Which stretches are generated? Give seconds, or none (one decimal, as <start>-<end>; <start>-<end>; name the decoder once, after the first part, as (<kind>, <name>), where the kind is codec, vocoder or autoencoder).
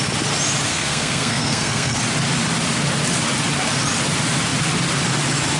0.7-2.0 (codec, SNAC)